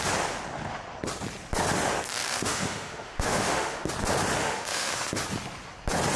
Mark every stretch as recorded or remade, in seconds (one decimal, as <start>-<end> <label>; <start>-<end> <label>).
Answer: 0.0-2.3 recorded; 2.3-3.9 remade; 3.9-4.4 recorded; 4.4-5.1 remade; 5.1-6.2 recorded